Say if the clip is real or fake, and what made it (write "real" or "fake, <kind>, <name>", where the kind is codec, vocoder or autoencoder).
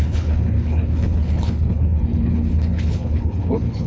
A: fake, codec, HILCodec